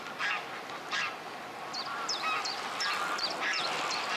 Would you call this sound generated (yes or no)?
yes